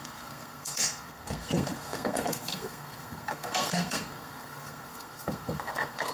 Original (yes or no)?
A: no